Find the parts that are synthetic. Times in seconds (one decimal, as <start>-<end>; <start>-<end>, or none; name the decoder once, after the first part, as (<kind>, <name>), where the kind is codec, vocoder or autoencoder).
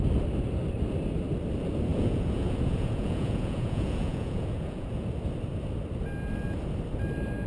1.9-5.1 (vocoder, Vocos)